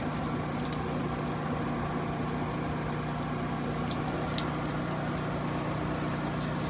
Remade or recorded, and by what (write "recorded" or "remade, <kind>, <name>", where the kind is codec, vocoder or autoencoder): recorded